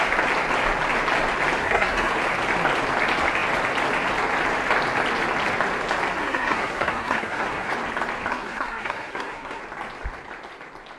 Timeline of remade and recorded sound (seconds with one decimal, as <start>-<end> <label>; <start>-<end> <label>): 0.0-1.6 recorded; 1.6-2.1 remade; 2.1-6.2 recorded; 6.2-7.7 remade; 7.7-8.3 recorded; 8.3-9.6 remade; 9.6-11.0 recorded